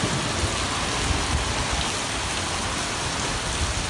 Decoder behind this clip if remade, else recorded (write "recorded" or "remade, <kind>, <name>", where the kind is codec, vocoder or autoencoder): recorded